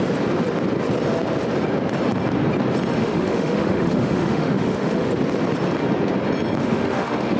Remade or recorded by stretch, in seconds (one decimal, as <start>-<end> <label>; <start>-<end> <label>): 0.0-3.0 recorded; 3.0-5.1 remade; 5.1-6.6 recorded; 6.6-7.4 remade